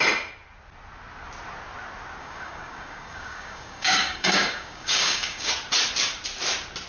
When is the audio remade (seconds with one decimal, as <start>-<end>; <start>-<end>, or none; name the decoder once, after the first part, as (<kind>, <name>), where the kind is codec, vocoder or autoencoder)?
2.2-5.5 (codec, DAC)